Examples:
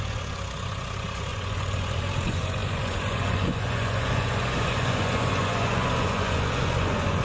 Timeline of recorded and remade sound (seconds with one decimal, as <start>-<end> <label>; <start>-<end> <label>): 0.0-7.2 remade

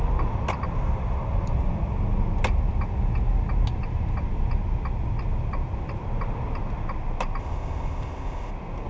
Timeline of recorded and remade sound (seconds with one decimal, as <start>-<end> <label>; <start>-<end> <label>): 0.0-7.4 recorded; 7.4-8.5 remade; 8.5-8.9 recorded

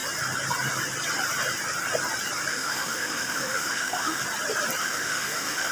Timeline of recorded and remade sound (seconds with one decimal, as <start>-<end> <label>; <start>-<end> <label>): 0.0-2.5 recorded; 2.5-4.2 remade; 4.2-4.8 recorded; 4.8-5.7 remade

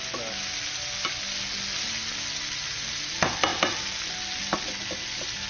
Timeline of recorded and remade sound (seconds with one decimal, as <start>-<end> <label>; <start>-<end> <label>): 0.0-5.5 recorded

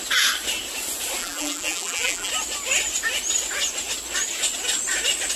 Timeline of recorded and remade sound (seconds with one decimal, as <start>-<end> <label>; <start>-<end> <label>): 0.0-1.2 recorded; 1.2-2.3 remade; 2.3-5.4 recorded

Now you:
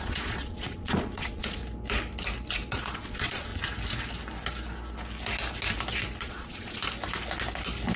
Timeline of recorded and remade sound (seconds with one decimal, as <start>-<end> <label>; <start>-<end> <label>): 0.0-1.6 remade; 1.6-2.7 recorded; 2.7-3.5 remade; 3.5-6.2 recorded; 6.2-6.8 remade; 6.8-8.0 recorded

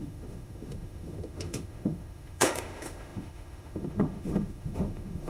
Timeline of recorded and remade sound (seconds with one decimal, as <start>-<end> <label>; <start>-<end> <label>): 0.0-5.3 remade